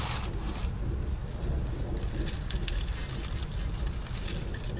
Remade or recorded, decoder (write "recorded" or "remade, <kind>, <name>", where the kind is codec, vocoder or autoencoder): recorded